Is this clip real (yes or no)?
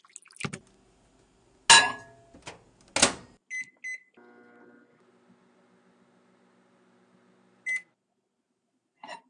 yes